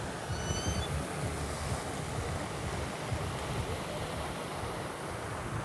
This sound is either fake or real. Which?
real